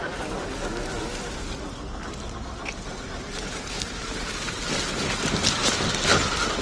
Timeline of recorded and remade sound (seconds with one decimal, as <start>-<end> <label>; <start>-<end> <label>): 0.0-2.9 recorded; 2.9-4.0 remade; 4.0-6.6 recorded